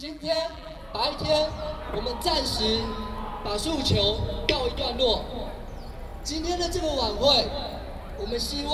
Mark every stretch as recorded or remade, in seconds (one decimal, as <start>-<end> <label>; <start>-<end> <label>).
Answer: 0.0-0.8 remade; 0.8-8.7 recorded